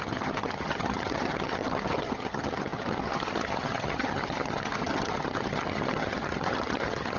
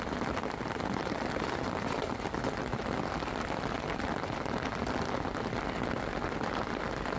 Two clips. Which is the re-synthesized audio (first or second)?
first